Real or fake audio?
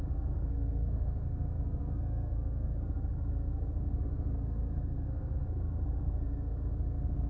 fake